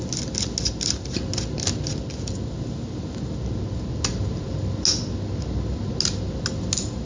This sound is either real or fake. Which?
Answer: real